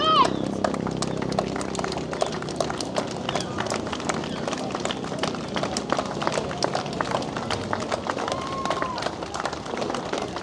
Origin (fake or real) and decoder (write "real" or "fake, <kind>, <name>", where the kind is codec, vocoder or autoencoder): real